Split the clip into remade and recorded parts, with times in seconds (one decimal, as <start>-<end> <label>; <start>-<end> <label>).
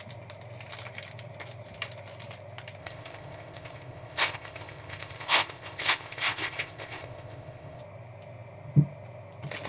0.0-2.8 recorded; 2.8-7.8 remade; 7.8-9.7 recorded